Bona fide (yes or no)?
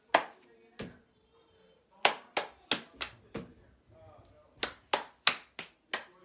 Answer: yes